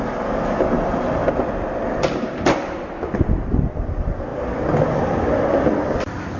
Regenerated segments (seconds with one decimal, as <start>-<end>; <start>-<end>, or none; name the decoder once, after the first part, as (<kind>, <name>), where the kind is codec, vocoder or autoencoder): none